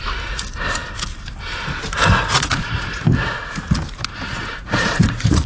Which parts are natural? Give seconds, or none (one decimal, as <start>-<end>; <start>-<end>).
0.0-2.0; 3.6-4.1